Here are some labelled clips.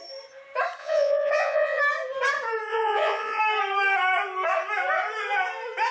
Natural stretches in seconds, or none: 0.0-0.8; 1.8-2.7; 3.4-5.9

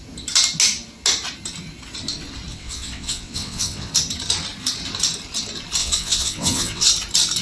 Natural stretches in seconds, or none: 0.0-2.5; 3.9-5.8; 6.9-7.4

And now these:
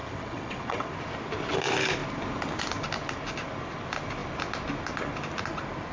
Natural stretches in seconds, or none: 0.9-5.9

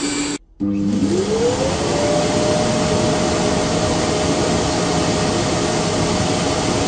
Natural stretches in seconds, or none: 0.0-6.9

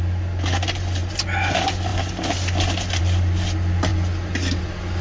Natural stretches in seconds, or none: 0.0-5.0

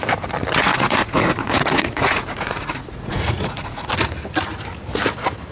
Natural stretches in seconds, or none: 0.0-0.6; 3.9-5.5

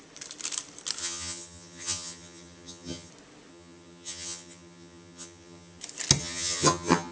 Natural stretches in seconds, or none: 0.0-1.0; 3.1-3.5; 5.8-6.2